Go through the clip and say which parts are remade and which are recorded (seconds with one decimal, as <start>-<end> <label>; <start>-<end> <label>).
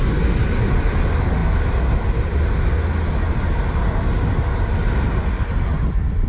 0.0-6.3 recorded